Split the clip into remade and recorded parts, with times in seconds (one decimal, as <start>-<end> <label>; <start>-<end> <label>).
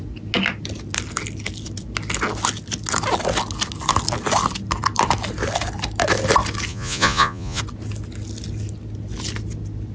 0.0-6.7 recorded; 6.7-7.6 remade; 7.6-9.9 recorded